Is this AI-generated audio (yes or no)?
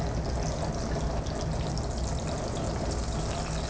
no